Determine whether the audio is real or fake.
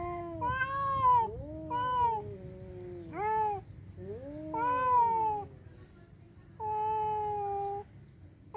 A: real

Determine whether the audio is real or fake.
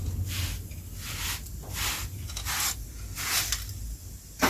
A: real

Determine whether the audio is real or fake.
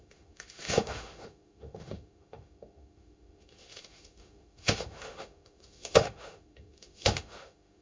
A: fake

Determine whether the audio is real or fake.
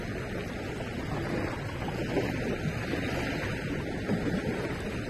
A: real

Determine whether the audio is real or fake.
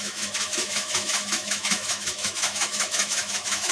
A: fake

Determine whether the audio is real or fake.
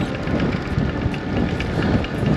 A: real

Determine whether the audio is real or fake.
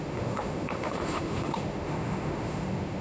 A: fake